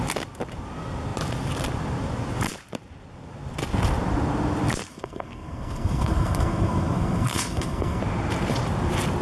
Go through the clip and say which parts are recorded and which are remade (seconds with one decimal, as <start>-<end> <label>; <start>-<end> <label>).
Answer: 0.0-4.9 recorded; 4.9-8.0 remade; 8.0-9.2 recorded